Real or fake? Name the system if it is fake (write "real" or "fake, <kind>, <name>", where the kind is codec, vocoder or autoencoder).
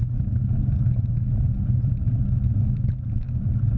real